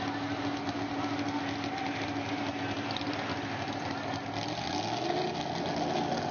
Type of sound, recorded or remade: recorded